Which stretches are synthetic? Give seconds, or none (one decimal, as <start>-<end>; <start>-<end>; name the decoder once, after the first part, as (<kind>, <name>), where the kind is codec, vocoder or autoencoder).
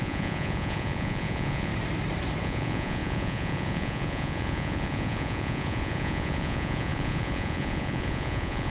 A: 0.0-1.7 (vocoder, Vocos); 2.4-8.7